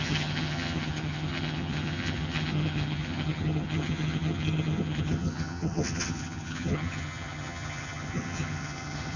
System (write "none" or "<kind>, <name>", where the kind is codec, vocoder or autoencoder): vocoder, HiFi-GAN